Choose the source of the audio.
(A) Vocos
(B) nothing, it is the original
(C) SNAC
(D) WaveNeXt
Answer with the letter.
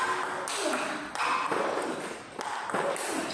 B